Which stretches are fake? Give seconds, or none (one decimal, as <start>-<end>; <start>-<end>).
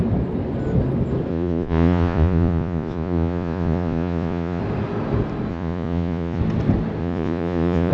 1.3-4.6; 5.5-6.4; 7.0-7.9